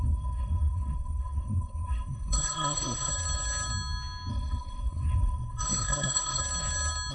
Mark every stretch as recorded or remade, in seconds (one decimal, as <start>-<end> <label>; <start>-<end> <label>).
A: 0.0-3.1 remade; 3.1-4.3 recorded; 4.3-6.4 remade; 6.4-7.1 recorded

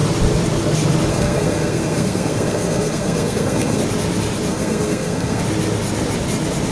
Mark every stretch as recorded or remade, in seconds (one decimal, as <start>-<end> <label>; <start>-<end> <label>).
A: 0.0-1.1 recorded; 1.1-3.8 remade; 3.8-4.5 recorded; 4.5-5.4 remade; 5.4-6.7 recorded

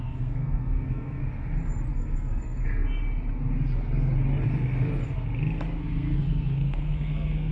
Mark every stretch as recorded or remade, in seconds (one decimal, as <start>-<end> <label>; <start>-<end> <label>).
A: 0.0-1.2 remade; 1.2-1.9 recorded; 1.9-2.6 remade; 2.6-5.8 recorded; 5.8-7.5 remade

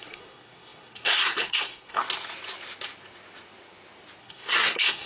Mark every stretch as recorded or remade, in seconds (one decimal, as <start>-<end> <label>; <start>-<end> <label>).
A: 0.0-2.0 remade; 2.0-4.2 recorded; 4.2-5.1 remade

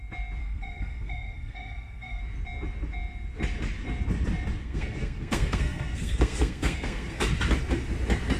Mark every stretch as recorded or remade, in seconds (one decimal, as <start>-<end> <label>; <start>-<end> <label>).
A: 0.0-0.4 recorded; 0.4-2.2 remade; 2.2-4.6 recorded; 4.6-7.2 remade; 7.2-8.4 recorded

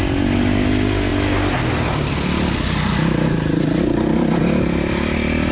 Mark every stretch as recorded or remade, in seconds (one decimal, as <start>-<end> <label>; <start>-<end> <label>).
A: 0.0-5.5 recorded